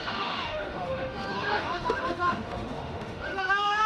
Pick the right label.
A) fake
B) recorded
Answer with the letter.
A